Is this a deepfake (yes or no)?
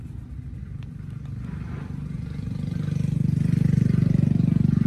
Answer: no